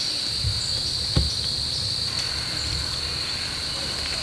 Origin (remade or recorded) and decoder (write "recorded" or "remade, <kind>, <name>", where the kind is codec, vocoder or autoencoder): recorded